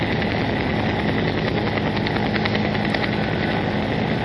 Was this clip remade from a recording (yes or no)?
no